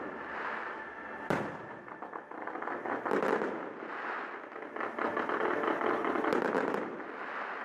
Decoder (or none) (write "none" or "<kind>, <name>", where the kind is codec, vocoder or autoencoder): none